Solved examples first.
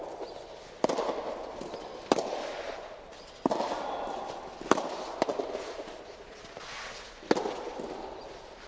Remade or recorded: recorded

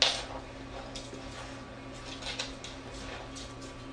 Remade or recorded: recorded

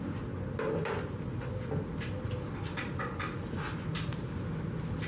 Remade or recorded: recorded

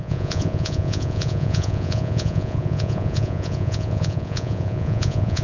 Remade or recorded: remade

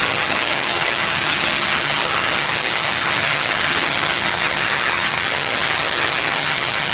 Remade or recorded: remade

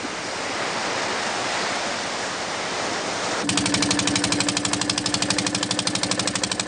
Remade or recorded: recorded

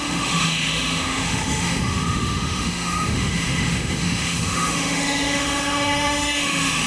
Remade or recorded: remade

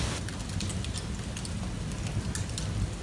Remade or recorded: recorded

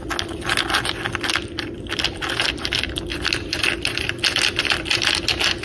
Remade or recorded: recorded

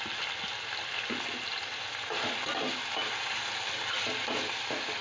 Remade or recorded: recorded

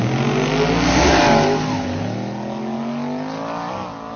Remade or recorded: recorded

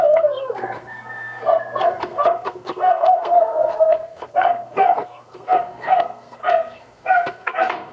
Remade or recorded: remade